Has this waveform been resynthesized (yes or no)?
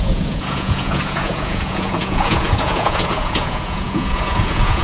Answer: yes